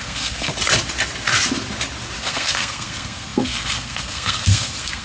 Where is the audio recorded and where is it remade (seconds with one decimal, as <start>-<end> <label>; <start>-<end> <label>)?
0.0-0.5 remade; 0.5-2.2 recorded; 2.2-5.0 remade